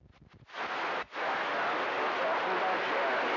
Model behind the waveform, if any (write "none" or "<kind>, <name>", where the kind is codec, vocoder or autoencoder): none